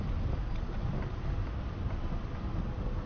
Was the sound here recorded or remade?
recorded